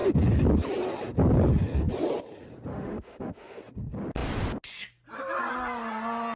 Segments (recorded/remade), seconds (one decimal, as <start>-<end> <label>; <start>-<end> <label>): 0.0-2.7 recorded; 2.7-3.6 remade; 3.6-6.4 recorded